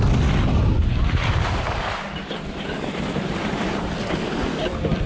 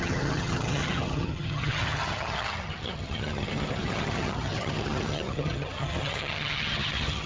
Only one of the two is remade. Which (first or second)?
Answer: second